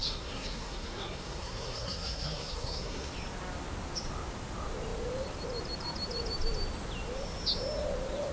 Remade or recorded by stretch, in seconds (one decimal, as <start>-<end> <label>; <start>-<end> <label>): 0.0-3.1 remade; 3.1-8.3 recorded